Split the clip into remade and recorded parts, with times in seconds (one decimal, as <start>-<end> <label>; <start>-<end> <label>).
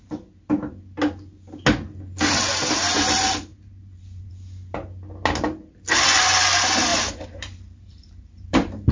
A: 0.0-3.5 recorded; 3.5-4.3 remade; 4.3-6.9 recorded; 6.9-8.9 remade